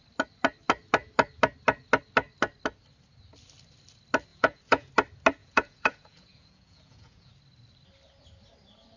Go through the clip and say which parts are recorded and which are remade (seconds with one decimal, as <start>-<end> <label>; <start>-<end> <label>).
0.0-4.3 recorded; 4.3-4.9 remade; 4.9-5.4 recorded; 5.4-7.3 remade; 7.3-9.0 recorded